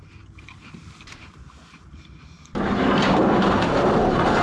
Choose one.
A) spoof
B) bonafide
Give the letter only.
A